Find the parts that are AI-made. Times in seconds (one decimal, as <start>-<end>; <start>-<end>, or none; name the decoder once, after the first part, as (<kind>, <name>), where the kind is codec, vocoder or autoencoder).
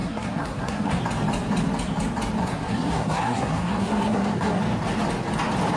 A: 0.0-1.0 (codec, SNAC); 2.4-4.6